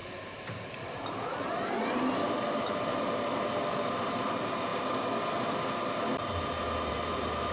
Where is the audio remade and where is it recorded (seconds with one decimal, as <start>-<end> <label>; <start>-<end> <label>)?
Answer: 0.0-4.7 remade; 4.7-6.9 recorded; 6.9-7.5 remade